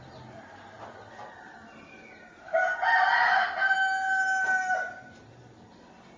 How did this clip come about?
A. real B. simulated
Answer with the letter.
A